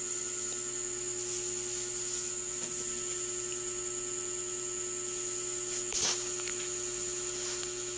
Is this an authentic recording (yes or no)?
yes